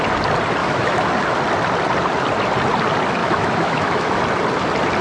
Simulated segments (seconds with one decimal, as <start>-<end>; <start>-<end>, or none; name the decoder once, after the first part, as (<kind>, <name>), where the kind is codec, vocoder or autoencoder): 0.6-1.1 (autoencoder, DAC-VAE); 3.2-4.2